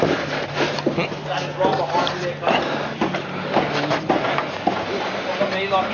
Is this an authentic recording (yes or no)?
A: yes